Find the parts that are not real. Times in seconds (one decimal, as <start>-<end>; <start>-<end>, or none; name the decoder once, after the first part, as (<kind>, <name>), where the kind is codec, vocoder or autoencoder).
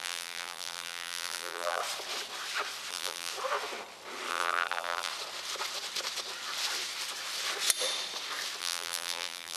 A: 0.0-1.8 (vocoder, BigVGAN v2); 2.9-3.3; 4.3-5.1; 8.6-9.6